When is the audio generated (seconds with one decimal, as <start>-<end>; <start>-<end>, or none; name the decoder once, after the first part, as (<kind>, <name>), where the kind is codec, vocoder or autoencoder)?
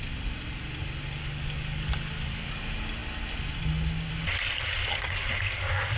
1.2-2.5 (codec, DAC); 4.8-5.3